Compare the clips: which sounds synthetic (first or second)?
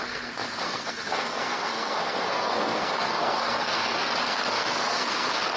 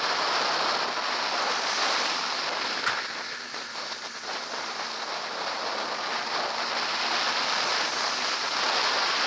first